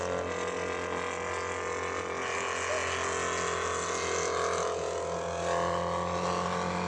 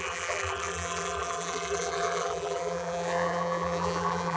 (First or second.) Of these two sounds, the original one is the first